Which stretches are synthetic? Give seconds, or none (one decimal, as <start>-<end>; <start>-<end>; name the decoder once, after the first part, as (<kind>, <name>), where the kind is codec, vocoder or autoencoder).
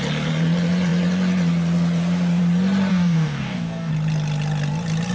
2.9-3.9 (codec, DAC)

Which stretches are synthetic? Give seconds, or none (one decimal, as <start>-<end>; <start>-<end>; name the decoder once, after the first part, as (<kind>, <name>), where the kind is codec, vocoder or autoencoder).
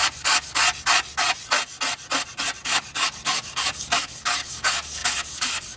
0.0-0.6 (codec, DAC); 2.6-5.8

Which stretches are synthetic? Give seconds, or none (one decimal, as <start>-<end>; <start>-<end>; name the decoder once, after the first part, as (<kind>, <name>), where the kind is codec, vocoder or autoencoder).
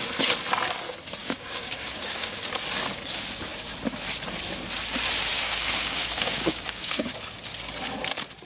1.2-2.5 (codec, DAC); 5.3-7.1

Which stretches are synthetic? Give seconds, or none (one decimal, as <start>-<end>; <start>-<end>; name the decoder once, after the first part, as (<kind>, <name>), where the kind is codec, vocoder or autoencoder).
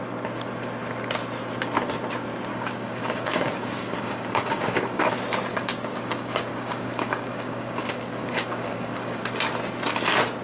2.5-5.1 (codec, DAC); 5.5-9.2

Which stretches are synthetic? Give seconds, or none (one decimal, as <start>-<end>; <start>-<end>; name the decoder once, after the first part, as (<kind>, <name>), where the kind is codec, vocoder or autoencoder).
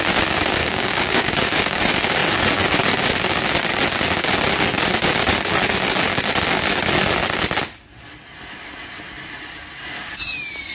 0.6-1.8 (codec, DAC)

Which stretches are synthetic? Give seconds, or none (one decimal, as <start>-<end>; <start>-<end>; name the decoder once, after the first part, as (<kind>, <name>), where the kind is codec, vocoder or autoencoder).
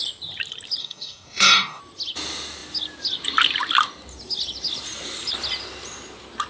0.8-1.8 (codec, DAC)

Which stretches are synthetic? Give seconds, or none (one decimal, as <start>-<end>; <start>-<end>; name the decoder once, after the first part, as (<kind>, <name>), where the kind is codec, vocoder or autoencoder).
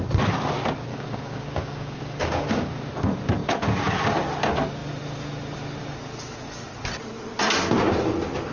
0.9-2.9 (codec, DAC)